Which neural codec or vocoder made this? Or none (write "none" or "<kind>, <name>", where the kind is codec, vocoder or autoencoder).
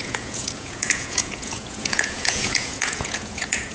vocoder, Vocos